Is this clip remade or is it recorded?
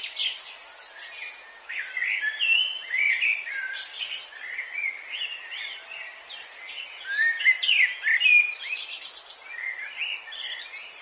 recorded